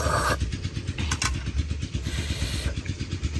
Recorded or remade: recorded